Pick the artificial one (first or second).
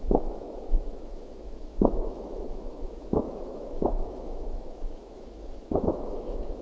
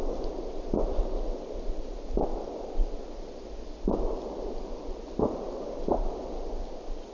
first